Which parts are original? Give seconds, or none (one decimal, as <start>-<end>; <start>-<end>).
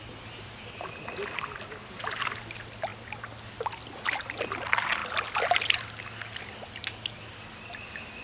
0.0-8.2